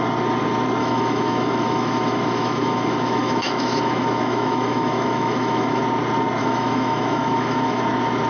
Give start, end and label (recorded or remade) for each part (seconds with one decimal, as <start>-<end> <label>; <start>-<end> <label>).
0.0-0.8 recorded; 0.8-5.8 remade; 5.8-6.4 recorded; 6.4-7.8 remade; 7.8-8.3 recorded